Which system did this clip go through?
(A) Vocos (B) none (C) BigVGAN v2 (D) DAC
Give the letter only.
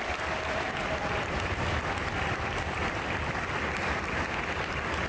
C